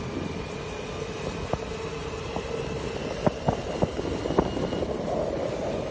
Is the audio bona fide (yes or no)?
yes